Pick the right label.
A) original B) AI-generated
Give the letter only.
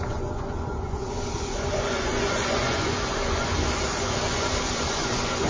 B